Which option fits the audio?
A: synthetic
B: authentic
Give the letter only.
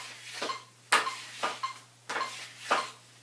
B